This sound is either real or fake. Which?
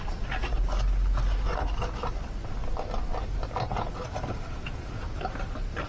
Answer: real